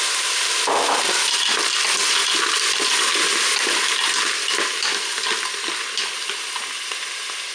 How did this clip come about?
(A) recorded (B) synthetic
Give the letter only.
A